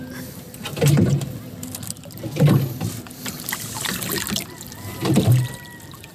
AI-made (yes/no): no